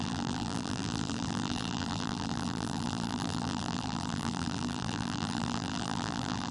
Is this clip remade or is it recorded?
remade